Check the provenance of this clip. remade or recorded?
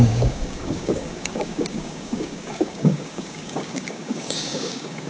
remade